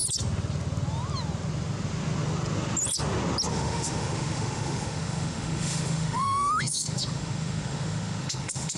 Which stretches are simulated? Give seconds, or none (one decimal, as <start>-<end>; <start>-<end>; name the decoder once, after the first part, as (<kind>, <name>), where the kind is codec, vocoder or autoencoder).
3.5-8.8 (autoencoder, DAC-VAE)

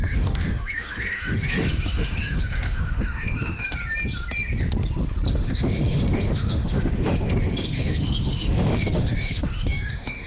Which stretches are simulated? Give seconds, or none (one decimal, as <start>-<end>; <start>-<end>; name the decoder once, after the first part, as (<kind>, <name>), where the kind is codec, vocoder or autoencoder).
0.0-3.8 (autoencoder, DAC-VAE); 5.3-10.3